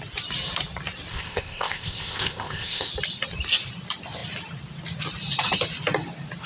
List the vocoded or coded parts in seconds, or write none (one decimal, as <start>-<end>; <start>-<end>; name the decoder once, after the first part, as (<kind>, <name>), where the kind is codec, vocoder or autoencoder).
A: 1.1-2.9 (codec, ZipCodec)